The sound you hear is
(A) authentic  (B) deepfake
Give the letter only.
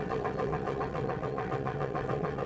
B